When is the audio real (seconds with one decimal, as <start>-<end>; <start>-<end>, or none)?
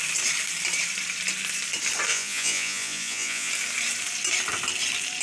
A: 0.0-2.1; 3.5-5.2